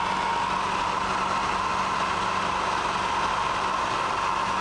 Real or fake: real